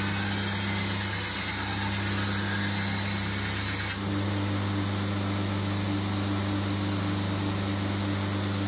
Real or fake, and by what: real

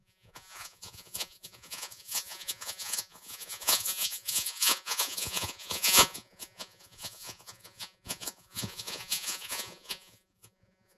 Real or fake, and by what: fake, vocoder, Vocos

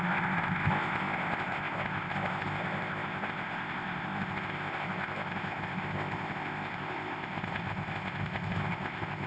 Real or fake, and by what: fake, codec, ZipCodec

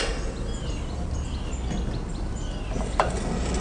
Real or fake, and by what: real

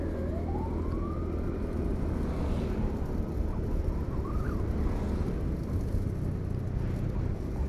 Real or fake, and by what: real